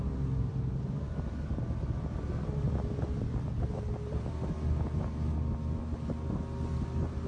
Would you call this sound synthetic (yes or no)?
no